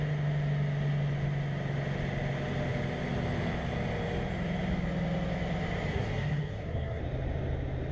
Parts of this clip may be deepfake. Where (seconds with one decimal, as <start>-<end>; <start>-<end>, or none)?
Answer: 5.9-7.0